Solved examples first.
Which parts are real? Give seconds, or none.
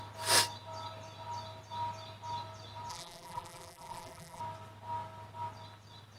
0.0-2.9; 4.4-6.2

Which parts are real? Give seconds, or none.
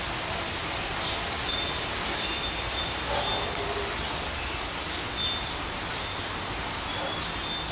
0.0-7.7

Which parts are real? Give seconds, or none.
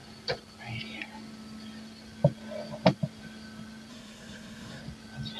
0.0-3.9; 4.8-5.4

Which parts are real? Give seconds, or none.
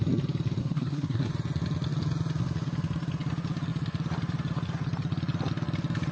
0.0-0.6; 1.3-6.1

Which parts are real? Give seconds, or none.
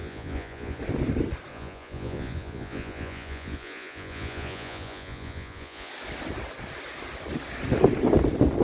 0.8-1.5; 5.9-8.6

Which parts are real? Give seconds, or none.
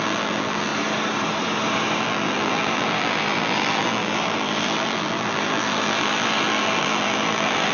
0.7-2.0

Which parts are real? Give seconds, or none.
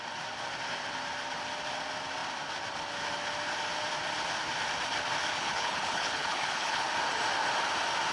0.0-5.3; 6.9-8.1